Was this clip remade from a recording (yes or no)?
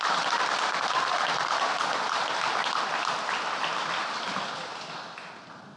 no